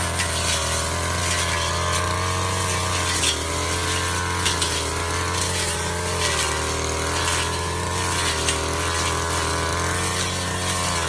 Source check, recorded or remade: recorded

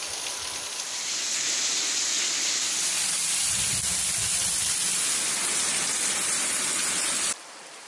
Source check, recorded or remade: remade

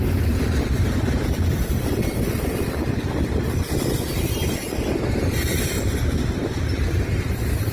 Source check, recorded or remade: recorded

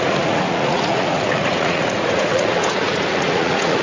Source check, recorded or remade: remade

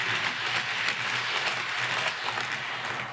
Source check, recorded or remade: recorded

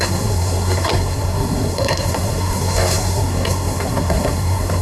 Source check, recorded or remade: remade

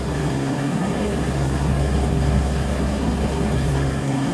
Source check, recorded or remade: remade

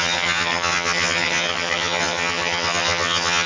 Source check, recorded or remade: remade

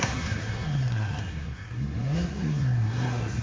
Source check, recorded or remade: remade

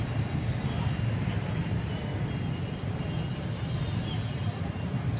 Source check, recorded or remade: recorded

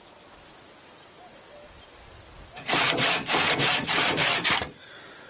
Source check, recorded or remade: recorded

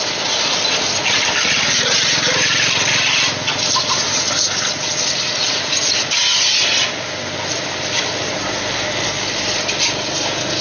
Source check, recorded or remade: recorded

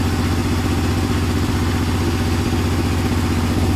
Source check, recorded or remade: recorded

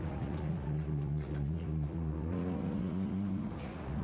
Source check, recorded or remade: remade